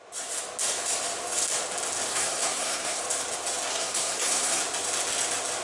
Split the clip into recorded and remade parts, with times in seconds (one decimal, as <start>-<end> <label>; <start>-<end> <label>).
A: 0.0-2.1 recorded; 2.1-3.0 remade; 3.0-3.7 recorded; 3.7-4.6 remade; 4.6-5.6 recorded